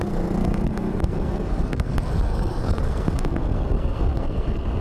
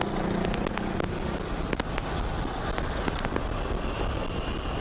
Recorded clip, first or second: second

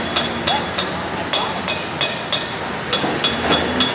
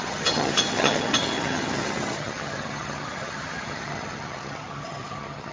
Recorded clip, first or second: first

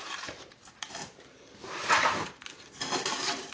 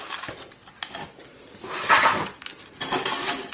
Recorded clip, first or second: second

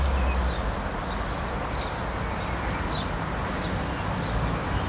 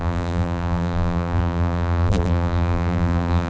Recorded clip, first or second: first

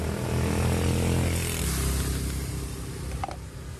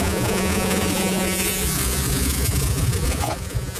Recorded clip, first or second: first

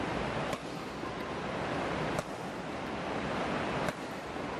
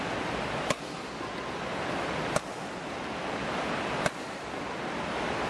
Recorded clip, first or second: second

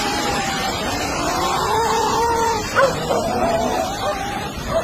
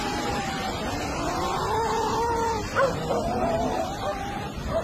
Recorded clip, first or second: second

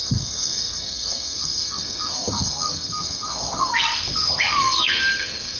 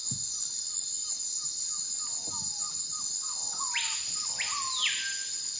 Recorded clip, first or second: second